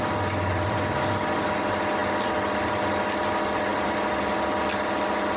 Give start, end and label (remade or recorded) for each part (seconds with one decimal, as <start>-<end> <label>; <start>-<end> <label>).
0.0-3.7 recorded; 3.7-4.3 remade; 4.3-5.4 recorded